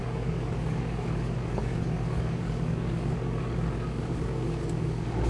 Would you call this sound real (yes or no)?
no